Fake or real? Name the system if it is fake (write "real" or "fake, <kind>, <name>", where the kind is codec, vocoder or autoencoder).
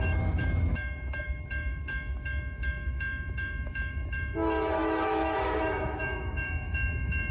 fake, autoencoder, DAC-VAE